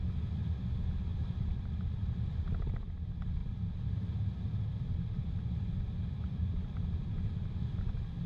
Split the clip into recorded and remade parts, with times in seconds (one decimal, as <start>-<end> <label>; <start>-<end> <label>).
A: 0.0-1.1 recorded; 1.1-2.4 remade; 2.4-3.4 recorded; 3.4-7.3 remade; 7.3-8.3 recorded